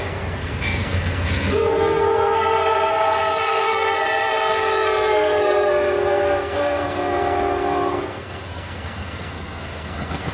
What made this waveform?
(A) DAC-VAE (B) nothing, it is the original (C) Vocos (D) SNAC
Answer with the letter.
D